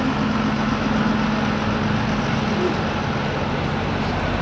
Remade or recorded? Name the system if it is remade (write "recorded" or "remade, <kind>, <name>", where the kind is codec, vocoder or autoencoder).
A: recorded